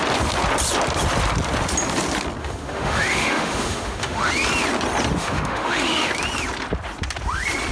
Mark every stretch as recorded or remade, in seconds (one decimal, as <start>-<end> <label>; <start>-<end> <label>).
0.0-2.4 recorded; 2.4-4.3 remade; 4.3-5.2 recorded; 5.2-6.1 remade; 6.1-7.7 recorded